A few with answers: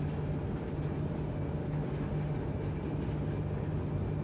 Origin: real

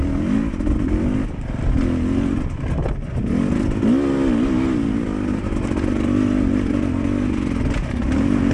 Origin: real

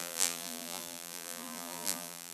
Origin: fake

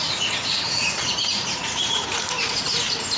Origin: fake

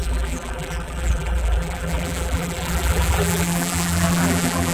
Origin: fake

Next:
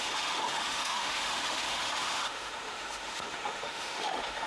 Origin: fake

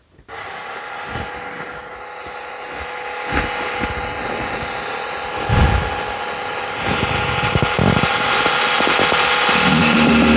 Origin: real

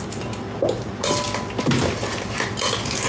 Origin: real